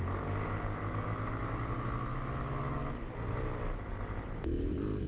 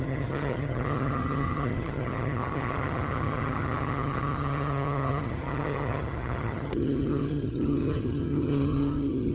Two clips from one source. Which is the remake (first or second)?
second